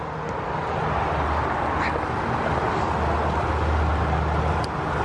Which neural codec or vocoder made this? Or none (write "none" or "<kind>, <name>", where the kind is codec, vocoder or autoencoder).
none